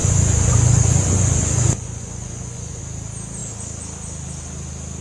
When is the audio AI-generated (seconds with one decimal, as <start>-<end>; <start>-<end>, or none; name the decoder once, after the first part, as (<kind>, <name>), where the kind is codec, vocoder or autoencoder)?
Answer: 0.0-2.8 (vocoder, Vocos)

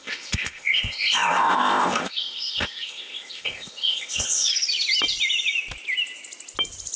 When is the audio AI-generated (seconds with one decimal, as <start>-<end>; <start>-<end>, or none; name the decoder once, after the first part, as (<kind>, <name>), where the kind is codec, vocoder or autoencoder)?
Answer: 0.0-4.5 (codec, ZipCodec)